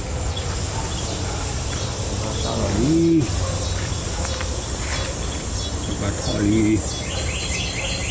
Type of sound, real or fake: real